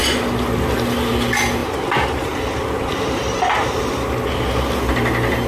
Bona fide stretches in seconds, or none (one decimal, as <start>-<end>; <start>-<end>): none